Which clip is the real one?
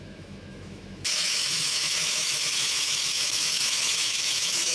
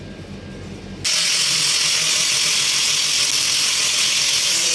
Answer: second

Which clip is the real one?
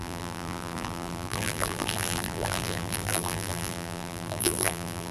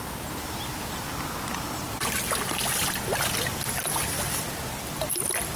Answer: second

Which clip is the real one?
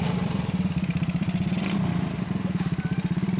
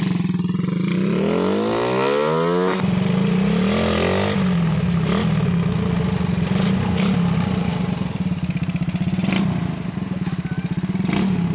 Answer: second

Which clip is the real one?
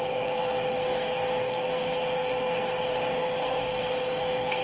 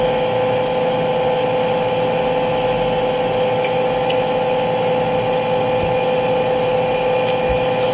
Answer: second